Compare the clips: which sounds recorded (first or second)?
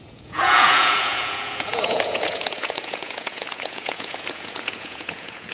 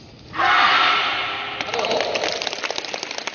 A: second